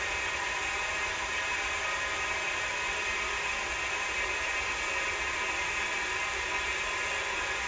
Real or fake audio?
real